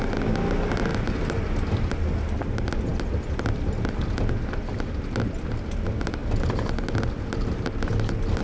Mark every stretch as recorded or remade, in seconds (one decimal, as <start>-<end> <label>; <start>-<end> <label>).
0.0-0.9 recorded; 0.9-1.8 remade; 1.8-8.4 recorded